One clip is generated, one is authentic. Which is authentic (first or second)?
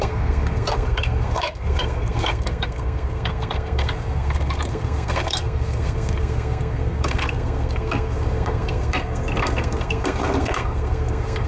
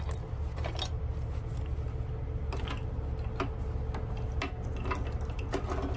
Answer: second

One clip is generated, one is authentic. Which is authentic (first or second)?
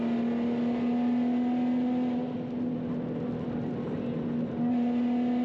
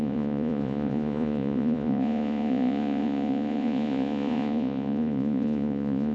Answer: first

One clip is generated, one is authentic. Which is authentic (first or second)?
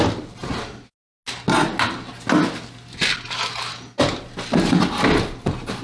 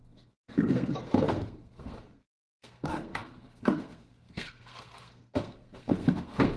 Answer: first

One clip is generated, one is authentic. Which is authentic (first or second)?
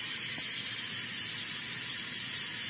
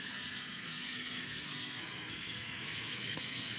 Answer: first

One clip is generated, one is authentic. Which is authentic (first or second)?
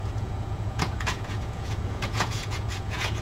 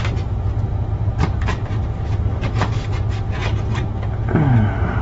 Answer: second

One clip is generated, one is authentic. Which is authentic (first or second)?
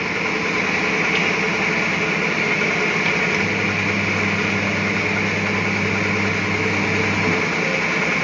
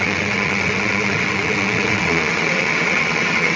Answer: first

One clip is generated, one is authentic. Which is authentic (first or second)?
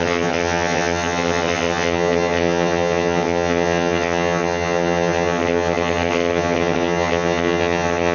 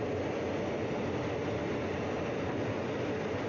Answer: second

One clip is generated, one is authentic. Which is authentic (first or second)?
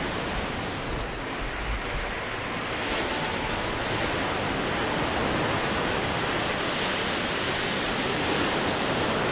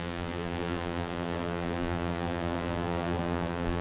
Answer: first